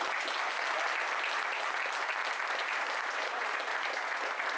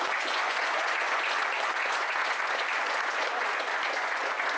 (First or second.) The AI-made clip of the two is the second